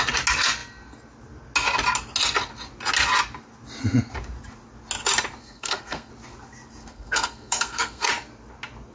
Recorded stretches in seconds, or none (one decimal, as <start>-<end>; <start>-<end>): 0.0-5.4; 6.1-6.8; 8.1-8.9